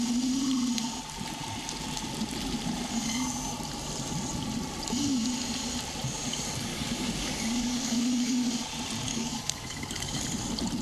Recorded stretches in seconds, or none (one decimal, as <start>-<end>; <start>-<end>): 0.0-6.7; 8.5-9.1; 10.2-10.8